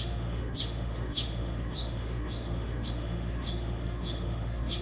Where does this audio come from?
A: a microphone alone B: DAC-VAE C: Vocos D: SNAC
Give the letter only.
B